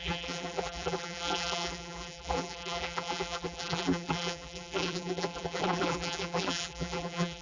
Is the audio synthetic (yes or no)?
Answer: yes